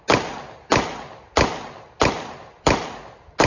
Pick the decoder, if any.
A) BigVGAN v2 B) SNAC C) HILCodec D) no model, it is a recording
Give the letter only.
D